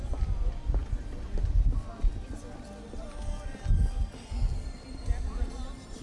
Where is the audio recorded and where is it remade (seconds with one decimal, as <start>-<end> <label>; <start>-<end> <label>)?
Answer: 0.0-6.0 recorded